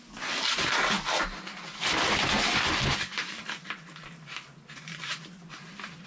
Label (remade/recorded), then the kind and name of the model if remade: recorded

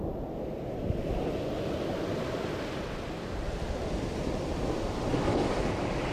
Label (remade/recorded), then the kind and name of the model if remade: recorded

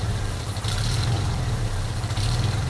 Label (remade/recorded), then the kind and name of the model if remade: remade, vocoder, BigVGAN v2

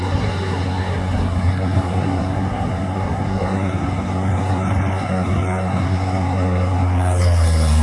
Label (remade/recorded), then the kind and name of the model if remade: remade, codec, SNAC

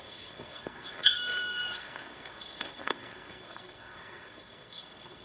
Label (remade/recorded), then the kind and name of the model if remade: remade, codec, SNAC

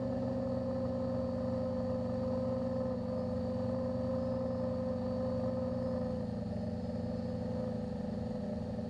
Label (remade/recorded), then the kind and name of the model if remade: recorded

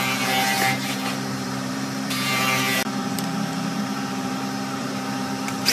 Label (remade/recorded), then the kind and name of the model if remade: remade, vocoder, BigVGAN v2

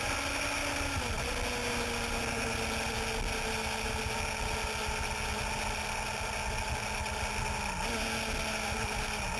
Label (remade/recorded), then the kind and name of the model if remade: recorded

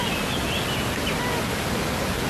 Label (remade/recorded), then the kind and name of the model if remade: recorded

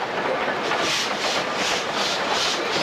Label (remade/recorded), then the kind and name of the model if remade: recorded